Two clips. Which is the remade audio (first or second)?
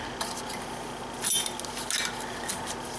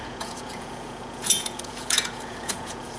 second